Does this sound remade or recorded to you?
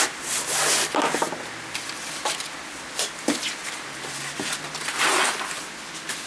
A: recorded